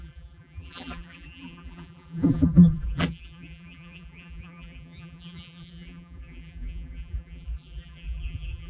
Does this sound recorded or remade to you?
remade